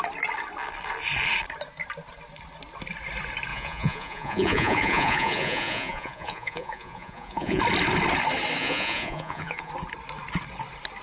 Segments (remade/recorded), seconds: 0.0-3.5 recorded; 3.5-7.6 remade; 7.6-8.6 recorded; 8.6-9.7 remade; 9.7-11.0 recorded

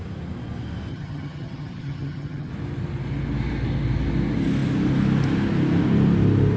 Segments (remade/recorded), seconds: 0.0-0.9 recorded; 0.9-2.5 remade; 2.5-6.6 recorded

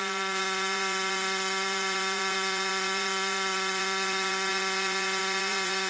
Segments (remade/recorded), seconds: 0.0-5.9 remade

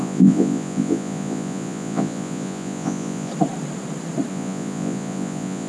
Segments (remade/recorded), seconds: 0.0-3.3 remade; 3.3-4.3 recorded; 4.3-5.7 remade

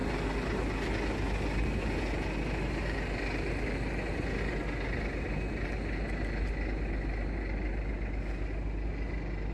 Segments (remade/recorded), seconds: 0.0-9.5 recorded

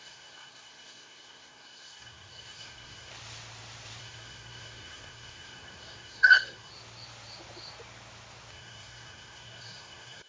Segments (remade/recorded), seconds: 0.0-3.1 remade; 3.1-4.0 recorded; 4.0-6.7 remade; 6.7-8.5 recorded; 8.5-10.3 remade

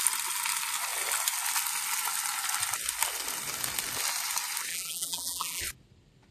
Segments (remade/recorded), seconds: 0.0-4.7 recorded; 4.7-5.6 remade; 5.6-6.3 recorded